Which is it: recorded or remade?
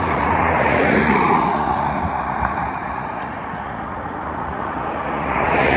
remade